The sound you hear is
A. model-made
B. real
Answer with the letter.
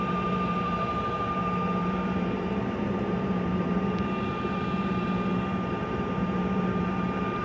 A